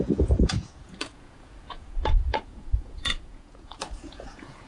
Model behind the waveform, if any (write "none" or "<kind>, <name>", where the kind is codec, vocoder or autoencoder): vocoder, Vocos